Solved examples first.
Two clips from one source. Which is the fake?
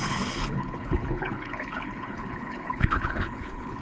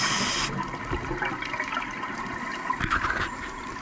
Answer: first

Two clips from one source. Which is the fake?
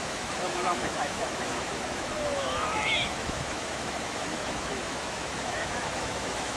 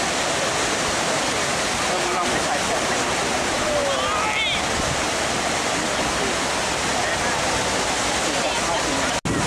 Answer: first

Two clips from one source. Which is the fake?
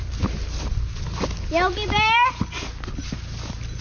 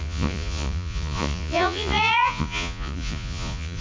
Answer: second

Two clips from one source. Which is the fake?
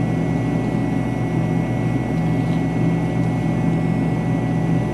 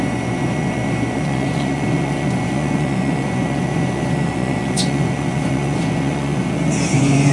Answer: second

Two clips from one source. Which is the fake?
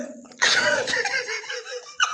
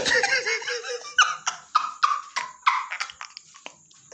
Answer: first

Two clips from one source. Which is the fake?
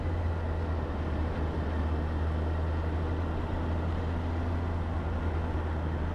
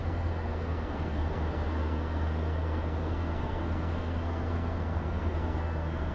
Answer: second